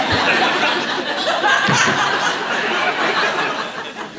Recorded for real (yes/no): yes